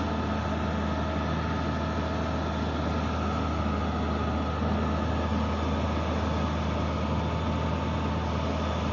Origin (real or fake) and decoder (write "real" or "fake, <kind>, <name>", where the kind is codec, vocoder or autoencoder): real